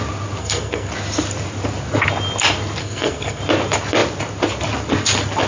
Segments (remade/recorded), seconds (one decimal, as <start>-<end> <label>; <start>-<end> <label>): 0.0-0.4 recorded; 0.4-0.9 remade; 0.9-2.8 recorded; 2.8-3.4 remade; 3.4-5.5 recorded